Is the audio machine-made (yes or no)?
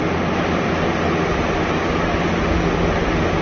no